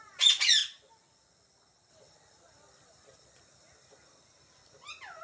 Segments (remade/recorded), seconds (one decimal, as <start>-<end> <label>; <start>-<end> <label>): 0.0-5.2 recorded

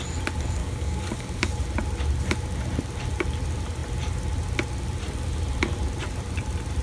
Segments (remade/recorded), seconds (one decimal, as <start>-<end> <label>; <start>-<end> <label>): 0.0-0.6 recorded; 0.6-1.5 remade; 1.5-6.8 recorded